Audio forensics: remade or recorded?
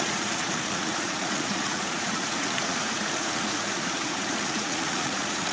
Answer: remade